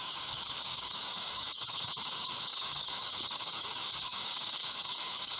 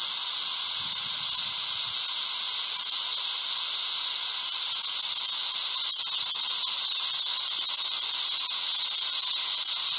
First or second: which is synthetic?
first